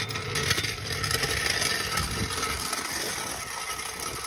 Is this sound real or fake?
real